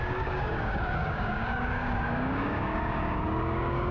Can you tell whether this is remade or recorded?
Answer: remade